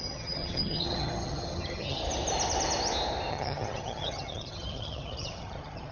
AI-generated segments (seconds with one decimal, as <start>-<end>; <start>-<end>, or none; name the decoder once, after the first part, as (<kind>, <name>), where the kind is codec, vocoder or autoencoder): 0.0-2.0 (vocoder, HiFi-GAN); 3.3-5.9